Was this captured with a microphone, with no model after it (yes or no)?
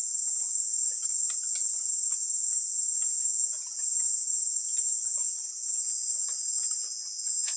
no